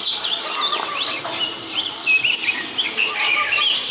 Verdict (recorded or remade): remade